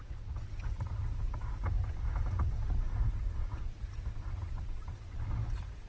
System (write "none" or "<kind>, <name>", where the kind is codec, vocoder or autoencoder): vocoder, Vocos